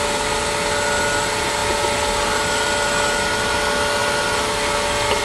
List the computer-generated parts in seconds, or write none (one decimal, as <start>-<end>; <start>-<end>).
none